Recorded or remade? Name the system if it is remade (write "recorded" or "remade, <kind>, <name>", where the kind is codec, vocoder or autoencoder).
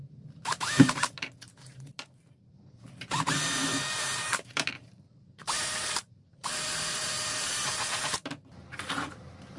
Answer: remade, vocoder, BigVGAN v2